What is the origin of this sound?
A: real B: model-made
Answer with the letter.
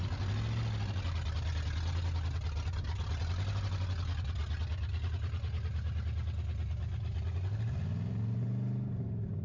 A